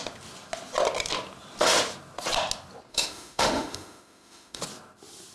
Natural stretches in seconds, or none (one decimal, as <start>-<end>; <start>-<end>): 0.0-2.9; 4.6-5.3